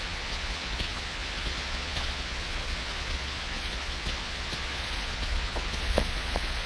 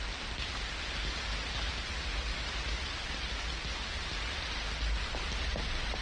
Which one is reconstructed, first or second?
first